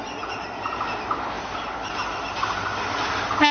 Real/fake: real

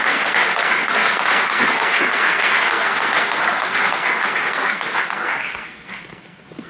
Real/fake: fake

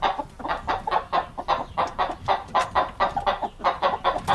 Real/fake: real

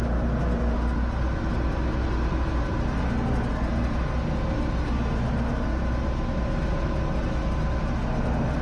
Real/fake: real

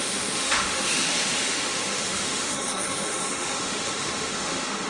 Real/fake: fake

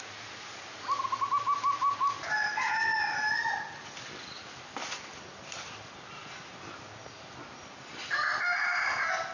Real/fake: real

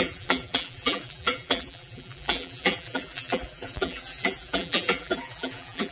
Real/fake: fake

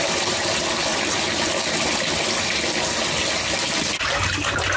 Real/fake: real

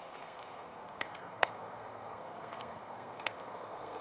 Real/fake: fake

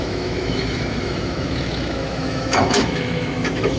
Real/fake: fake